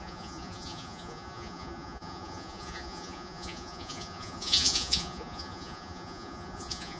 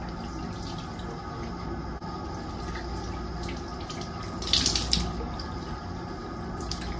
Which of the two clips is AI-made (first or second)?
first